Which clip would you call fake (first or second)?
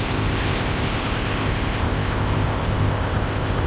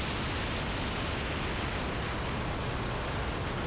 first